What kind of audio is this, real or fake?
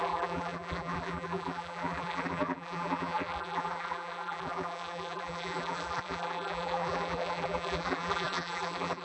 fake